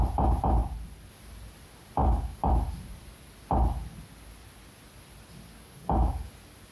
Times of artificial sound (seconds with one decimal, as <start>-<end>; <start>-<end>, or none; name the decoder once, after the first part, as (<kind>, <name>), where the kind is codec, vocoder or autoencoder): 2.0-2.5 (codec, DAC); 5.5-6.3